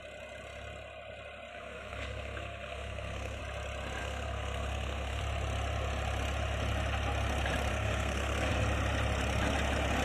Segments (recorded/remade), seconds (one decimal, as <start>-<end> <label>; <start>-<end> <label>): 0.0-1.5 recorded; 1.5-3.4 remade; 3.4-4.0 recorded; 4.0-5.2 remade; 5.2-7.7 recorded; 7.7-8.5 remade; 8.5-10.0 recorded